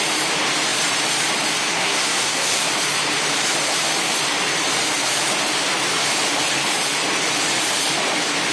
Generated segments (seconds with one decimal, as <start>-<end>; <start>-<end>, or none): 1.7-2.7